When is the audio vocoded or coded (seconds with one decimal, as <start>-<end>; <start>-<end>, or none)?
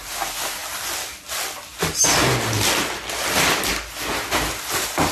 none